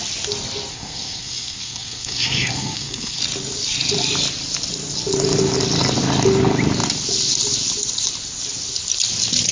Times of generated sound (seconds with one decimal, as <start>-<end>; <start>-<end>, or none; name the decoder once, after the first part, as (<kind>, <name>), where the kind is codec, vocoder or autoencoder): 0.7-3.2 (codec, SNAC)